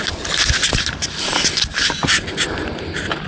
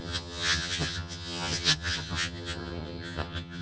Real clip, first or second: first